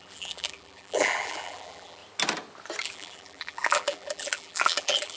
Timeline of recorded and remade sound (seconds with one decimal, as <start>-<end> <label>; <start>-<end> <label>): 0.0-2.0 remade; 2.0-2.8 recorded; 2.8-5.2 remade